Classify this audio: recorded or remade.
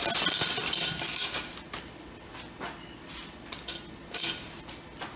recorded